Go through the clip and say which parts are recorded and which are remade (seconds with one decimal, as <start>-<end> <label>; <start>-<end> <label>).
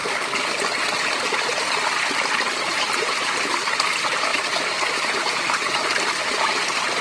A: 0.0-2.6 recorded; 2.6-4.3 remade; 4.3-5.0 recorded; 5.0-7.0 remade